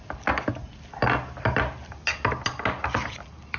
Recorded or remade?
recorded